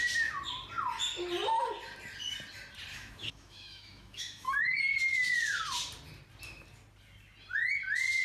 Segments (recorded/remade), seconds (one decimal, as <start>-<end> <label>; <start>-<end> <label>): 0.0-2.9 recorded; 2.9-4.8 remade; 4.8-8.2 recorded